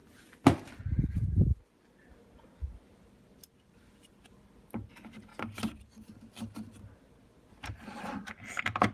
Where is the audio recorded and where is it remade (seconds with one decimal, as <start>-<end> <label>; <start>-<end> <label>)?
0.0-8.9 recorded